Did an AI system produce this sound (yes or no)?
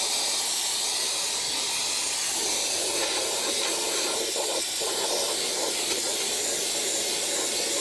no